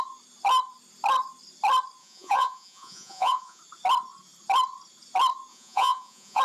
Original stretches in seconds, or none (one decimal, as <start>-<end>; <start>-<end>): 0.0-2.0; 3.6-5.5